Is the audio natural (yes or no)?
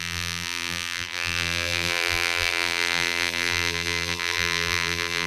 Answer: no